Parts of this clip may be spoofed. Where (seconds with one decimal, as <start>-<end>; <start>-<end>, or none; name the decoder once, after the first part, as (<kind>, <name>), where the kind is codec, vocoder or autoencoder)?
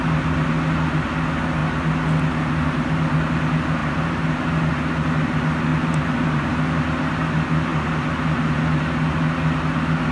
3.8-4.7 (vocoder, BigVGAN v2); 5.7-6.6